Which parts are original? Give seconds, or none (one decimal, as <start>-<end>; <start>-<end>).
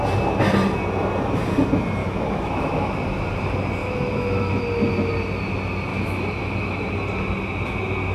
0.0-2.0; 2.9-3.8; 4.6-5.9; 6.9-8.1